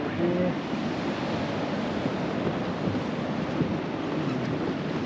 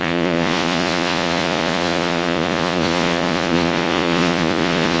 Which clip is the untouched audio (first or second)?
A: first